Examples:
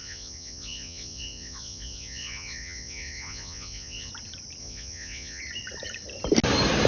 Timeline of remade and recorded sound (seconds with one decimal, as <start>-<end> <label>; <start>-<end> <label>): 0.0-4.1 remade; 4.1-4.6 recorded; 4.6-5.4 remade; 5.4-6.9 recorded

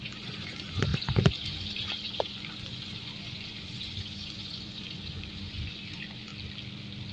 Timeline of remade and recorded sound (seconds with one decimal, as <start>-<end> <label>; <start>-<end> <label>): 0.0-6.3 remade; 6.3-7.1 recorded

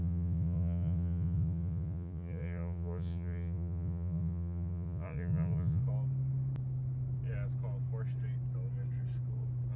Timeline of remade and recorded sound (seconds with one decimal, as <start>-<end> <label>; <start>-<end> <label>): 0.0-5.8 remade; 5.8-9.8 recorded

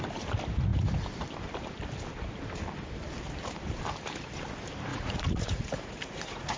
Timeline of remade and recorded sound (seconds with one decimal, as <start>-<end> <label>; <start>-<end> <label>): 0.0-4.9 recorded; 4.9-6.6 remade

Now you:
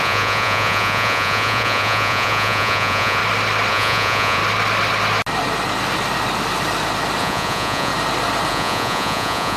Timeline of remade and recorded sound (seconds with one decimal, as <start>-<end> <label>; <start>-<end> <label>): 0.0-3.2 remade; 3.2-3.7 recorded; 3.7-4.4 remade; 4.4-7.2 recorded; 7.2-7.9 remade; 7.9-8.5 recorded; 8.5-9.6 remade